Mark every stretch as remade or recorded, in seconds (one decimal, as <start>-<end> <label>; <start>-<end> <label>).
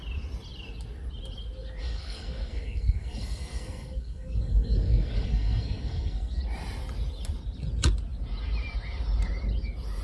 0.0-1.8 recorded; 1.8-6.4 remade; 6.4-10.0 recorded